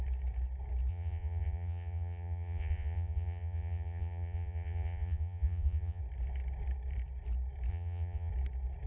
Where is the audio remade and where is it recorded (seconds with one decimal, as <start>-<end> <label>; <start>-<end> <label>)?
0.0-0.9 recorded; 0.9-6.0 remade; 6.0-7.7 recorded; 7.7-8.3 remade; 8.3-8.9 recorded